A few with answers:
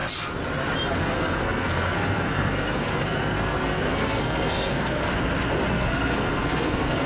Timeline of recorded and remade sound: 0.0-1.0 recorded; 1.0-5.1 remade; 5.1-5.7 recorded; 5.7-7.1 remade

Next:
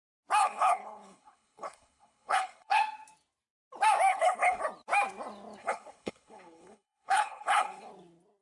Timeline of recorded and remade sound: 0.0-0.4 recorded; 0.4-2.8 remade; 2.8-4.1 recorded; 4.1-4.6 remade; 4.6-5.6 recorded; 5.6-7.9 remade; 7.9-8.4 recorded

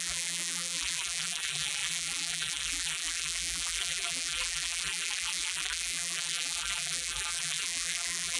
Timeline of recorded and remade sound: 0.0-8.4 remade

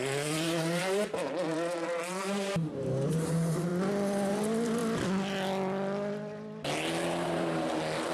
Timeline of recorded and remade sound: 0.0-3.7 remade; 3.7-4.3 recorded; 4.3-4.8 remade; 4.8-7.1 recorded; 7.1-8.1 remade

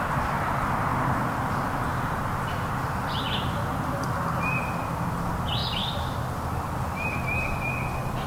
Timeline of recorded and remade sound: 0.0-0.9 recorded; 0.9-3.2 remade; 3.2-5.6 recorded; 5.6-6.3 remade; 6.3-8.3 recorded

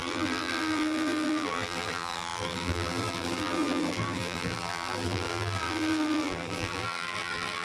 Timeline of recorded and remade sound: 0.0-7.6 remade